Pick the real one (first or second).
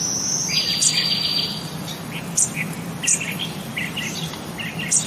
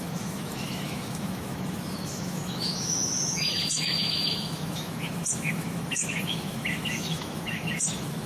first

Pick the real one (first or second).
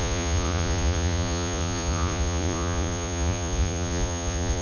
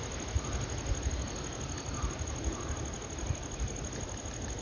second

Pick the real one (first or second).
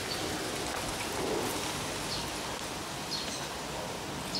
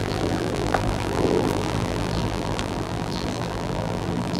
first